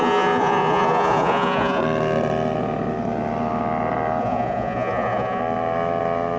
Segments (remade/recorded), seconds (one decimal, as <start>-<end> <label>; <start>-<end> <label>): 0.0-1.8 remade; 1.8-4.2 recorded; 4.2-5.4 remade; 5.4-6.4 recorded